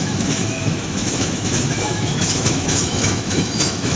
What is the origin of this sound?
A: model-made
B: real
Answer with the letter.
A